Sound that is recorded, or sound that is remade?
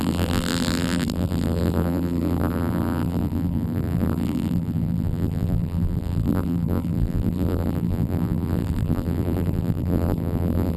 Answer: remade